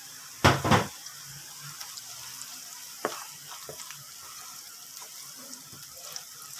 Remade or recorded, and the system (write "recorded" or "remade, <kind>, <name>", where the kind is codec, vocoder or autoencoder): recorded